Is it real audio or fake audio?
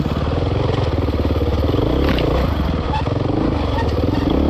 real